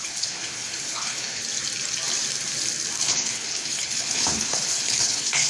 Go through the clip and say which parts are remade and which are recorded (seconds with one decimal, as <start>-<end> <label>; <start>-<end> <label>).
0.0-1.4 remade; 1.4-3.0 recorded; 3.0-5.5 remade